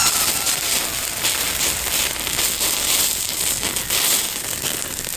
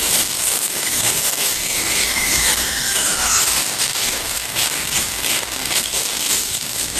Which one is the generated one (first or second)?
second